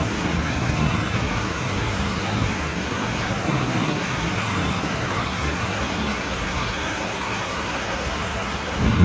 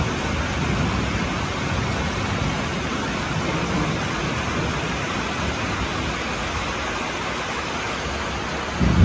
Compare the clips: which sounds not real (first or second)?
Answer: first